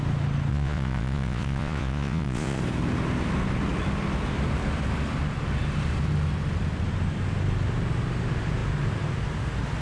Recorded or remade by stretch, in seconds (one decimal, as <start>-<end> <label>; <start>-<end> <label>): 0.0-0.5 recorded; 0.5-2.6 remade; 2.6-9.8 recorded